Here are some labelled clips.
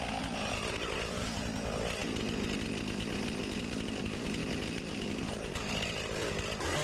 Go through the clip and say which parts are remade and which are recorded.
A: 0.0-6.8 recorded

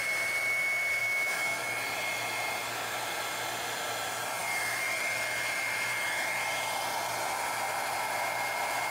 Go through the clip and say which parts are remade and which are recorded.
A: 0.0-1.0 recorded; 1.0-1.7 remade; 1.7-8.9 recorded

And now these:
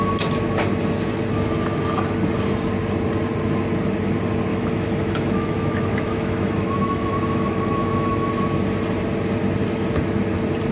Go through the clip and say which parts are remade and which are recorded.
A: 0.0-4.5 recorded; 4.5-8.3 remade; 8.3-10.7 recorded

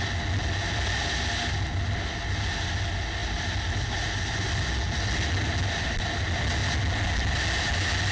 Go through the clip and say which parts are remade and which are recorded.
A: 0.0-8.1 recorded